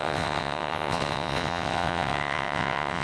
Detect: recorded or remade remade